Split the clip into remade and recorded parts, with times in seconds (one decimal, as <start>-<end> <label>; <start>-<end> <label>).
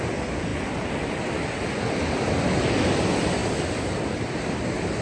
0.0-5.0 recorded